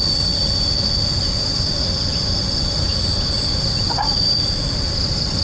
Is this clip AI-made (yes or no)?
yes